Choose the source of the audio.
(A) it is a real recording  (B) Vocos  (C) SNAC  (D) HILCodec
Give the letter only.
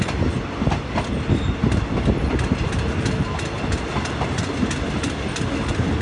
A